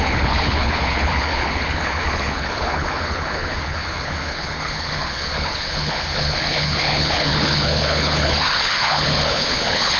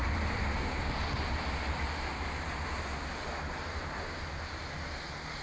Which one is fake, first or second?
first